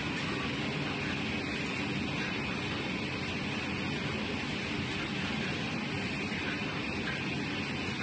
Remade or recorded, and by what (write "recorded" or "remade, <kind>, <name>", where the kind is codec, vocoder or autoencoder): recorded